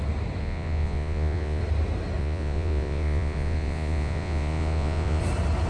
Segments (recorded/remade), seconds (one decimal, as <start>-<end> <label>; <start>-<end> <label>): 0.0-0.4 recorded; 0.4-1.6 remade; 1.6-2.2 recorded; 2.2-5.2 remade; 5.2-5.7 recorded